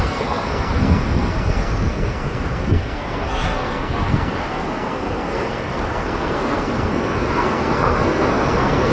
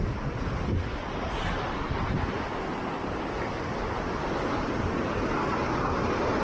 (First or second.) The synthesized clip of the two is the first